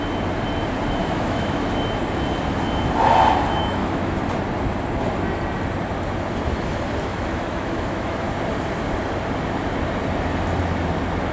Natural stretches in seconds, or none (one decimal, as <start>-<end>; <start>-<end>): 0.0-1.0; 1.7-3.6; 4.2-7.1; 8.3-11.3